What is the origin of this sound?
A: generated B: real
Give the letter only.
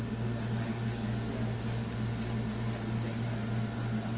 B